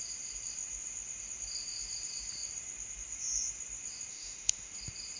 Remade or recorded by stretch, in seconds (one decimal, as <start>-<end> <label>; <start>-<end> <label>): 0.0-4.1 recorded; 4.1-4.7 remade; 4.7-5.2 recorded